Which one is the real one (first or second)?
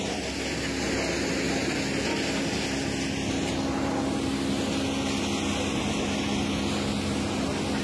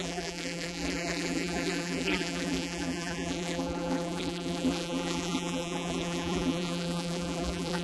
first